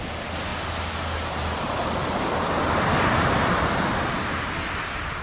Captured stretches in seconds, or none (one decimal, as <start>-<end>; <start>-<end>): 0.0-5.2